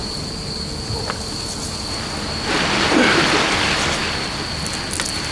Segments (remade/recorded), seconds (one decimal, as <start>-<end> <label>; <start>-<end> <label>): 0.0-5.3 recorded